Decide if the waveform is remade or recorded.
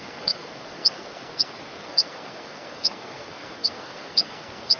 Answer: remade